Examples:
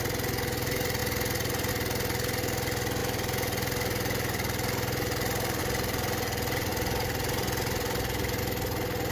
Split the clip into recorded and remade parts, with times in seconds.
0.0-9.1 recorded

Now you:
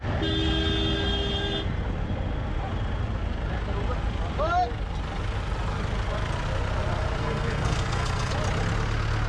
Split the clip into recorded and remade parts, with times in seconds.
0.0-7.2 recorded; 7.2-8.3 remade; 8.3-9.3 recorded

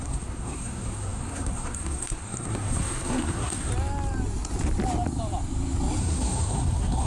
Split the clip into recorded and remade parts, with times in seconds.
0.0-3.7 remade; 3.7-6.0 recorded; 6.0-7.1 remade

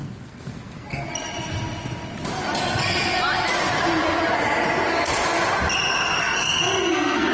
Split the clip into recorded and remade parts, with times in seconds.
0.0-1.1 remade; 1.1-6.2 recorded; 6.2-7.3 remade